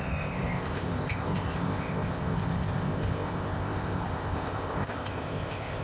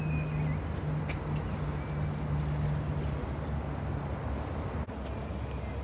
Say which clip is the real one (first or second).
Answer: second